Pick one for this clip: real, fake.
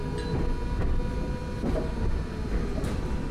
real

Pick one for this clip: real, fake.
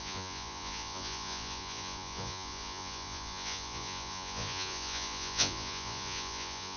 fake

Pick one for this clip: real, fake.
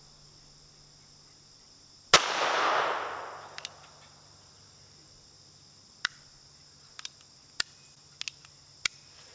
real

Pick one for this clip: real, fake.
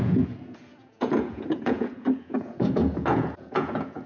fake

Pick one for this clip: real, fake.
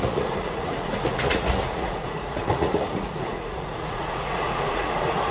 fake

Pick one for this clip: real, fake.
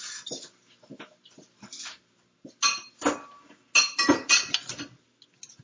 real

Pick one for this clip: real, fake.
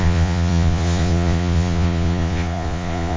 fake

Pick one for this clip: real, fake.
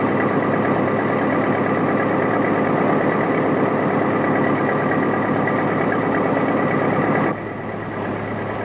real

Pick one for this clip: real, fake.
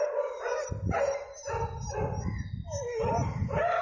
real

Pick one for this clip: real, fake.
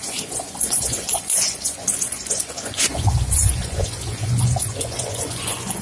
fake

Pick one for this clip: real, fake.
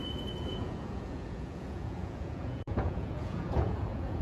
fake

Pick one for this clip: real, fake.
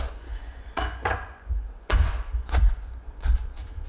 fake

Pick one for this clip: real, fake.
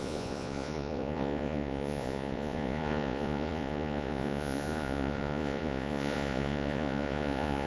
fake